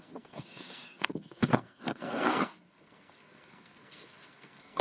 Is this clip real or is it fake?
fake